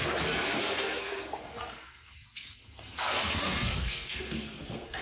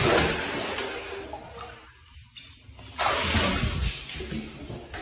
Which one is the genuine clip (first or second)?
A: second